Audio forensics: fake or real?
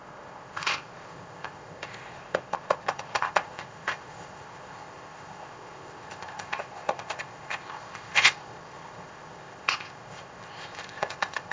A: fake